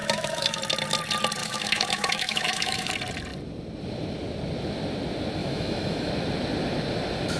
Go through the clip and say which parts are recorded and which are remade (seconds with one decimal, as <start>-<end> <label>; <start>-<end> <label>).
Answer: 0.0-0.6 remade; 0.6-1.4 recorded; 1.4-2.9 remade; 2.9-5.4 recorded; 5.4-6.1 remade; 6.1-7.4 recorded